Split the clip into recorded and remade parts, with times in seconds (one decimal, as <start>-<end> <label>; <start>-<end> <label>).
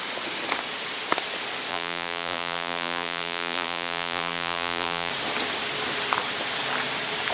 0.0-1.7 recorded; 1.7-5.1 remade; 5.1-7.3 recorded